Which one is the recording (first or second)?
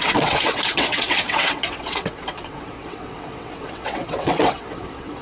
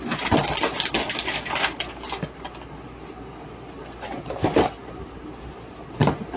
second